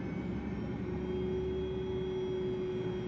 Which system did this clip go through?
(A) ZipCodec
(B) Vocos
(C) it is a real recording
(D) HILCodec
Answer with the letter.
C